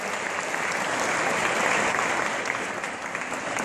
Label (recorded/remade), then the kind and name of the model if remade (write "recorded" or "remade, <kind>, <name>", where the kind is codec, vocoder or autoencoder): recorded